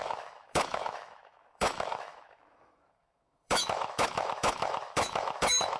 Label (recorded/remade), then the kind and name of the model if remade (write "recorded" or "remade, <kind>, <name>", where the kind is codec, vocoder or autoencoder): remade, autoencoder, DAC-VAE